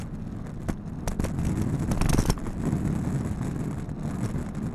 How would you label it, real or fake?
real